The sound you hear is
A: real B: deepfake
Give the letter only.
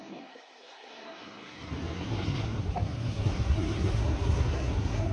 B